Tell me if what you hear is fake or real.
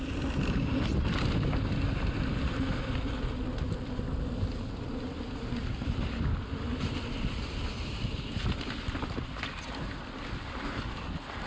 real